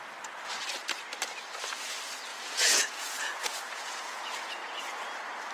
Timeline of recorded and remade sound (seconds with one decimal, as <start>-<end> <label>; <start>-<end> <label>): 0.0-2.3 recorded; 2.3-4.8 remade; 4.8-5.5 recorded

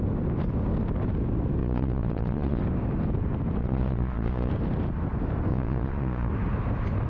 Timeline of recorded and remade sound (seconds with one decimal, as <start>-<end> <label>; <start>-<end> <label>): 0.0-1.6 recorded; 1.6-2.6 remade; 2.6-3.6 recorded; 3.6-4.5 remade; 4.5-5.5 recorded; 5.5-6.3 remade; 6.3-7.1 recorded

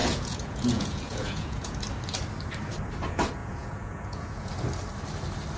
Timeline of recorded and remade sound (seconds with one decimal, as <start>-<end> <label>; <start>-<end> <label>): 0.0-1.8 remade; 1.8-3.4 recorded; 3.4-4.5 remade; 4.5-5.6 recorded